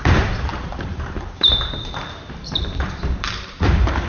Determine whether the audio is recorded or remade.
remade